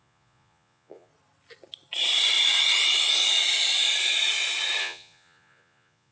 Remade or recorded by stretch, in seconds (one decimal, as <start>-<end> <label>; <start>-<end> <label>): 0.0-1.1 remade; 1.1-4.8 recorded; 4.8-6.1 remade